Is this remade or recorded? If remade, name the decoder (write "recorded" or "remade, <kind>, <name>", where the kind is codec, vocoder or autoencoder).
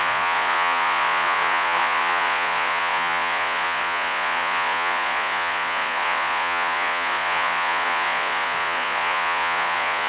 remade, vocoder, Vocos